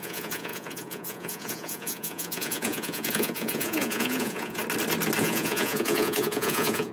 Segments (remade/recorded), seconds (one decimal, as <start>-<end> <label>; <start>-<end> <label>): 0.0-4.6 remade; 4.6-5.2 recorded; 5.2-6.9 remade